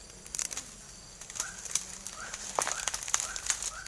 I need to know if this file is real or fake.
real